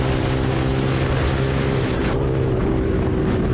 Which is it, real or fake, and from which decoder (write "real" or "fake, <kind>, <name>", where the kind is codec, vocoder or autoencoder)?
real